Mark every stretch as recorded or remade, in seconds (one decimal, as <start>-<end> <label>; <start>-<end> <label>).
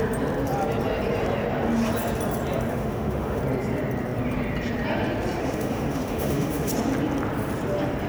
0.0-2.7 recorded; 2.7-3.4 remade; 3.4-5.4 recorded; 5.4-6.7 remade; 6.7-8.1 recorded